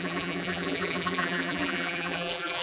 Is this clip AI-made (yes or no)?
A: yes